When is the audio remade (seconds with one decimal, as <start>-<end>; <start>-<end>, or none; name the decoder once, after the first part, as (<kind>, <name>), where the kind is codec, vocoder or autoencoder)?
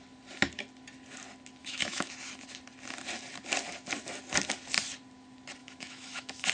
1.6-2.1 (autoencoder, DAC-VAE); 5.6-6.5